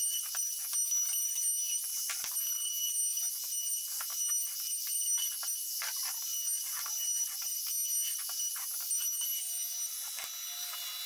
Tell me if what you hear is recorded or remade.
recorded